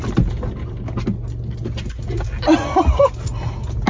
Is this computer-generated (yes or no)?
no